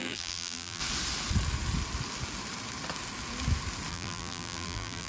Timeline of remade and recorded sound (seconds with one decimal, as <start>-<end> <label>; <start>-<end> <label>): 0.0-0.8 remade; 0.8-3.9 recorded; 3.9-5.1 remade